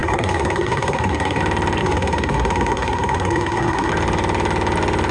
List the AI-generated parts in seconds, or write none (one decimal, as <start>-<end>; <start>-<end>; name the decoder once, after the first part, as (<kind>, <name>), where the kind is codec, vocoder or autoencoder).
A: 0.0-1.4 (codec, SNAC); 1.8-3.9